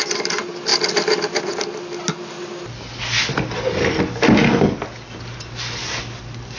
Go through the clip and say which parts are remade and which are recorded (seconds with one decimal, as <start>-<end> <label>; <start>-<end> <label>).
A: 0.0-6.6 recorded

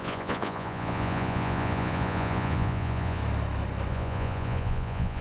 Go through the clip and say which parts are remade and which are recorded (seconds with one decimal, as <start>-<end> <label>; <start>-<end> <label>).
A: 0.0-3.2 remade; 3.2-3.9 recorded; 3.9-5.2 remade

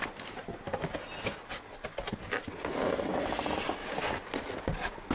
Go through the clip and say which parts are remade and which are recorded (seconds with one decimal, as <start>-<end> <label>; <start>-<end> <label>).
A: 0.0-5.1 recorded

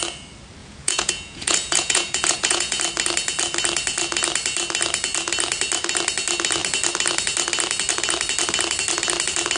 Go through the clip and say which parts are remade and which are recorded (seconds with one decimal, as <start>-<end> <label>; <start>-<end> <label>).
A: 0.0-0.6 recorded; 0.6-2.8 remade; 2.8-9.6 recorded